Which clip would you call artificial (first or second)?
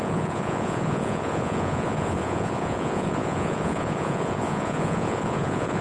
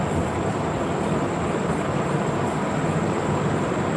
first